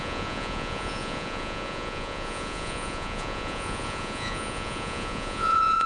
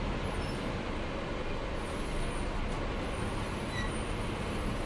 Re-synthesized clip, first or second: first